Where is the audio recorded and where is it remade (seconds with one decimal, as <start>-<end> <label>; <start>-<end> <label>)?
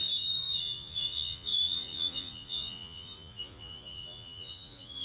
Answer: 0.0-5.0 remade